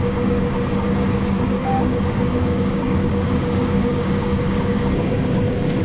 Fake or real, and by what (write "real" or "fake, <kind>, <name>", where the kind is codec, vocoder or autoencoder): fake, codec, DAC